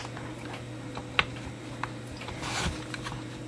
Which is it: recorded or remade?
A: recorded